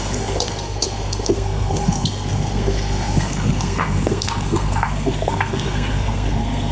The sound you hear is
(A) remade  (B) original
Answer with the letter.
A